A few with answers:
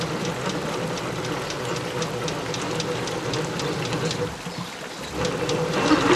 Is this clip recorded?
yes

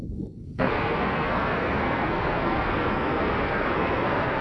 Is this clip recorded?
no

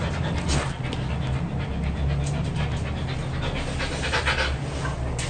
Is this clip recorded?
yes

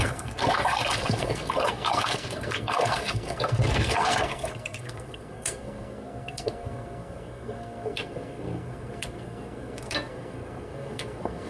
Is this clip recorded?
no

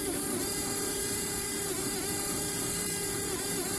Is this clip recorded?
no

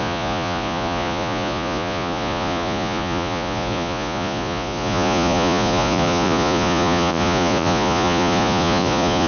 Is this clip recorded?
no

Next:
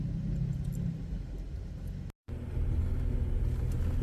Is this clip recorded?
yes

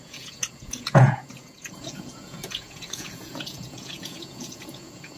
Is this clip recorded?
no